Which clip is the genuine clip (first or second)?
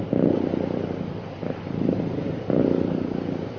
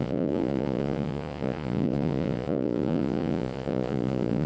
first